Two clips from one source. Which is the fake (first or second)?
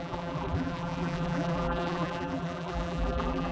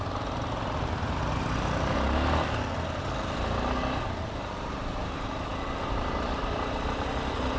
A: first